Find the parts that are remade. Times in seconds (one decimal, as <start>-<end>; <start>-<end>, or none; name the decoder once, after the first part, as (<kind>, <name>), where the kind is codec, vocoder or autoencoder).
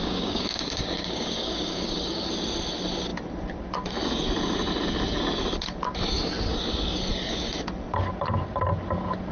0.0-2.3 (codec, DAC)